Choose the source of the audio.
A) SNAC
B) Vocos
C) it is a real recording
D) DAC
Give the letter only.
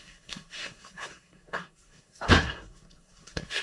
A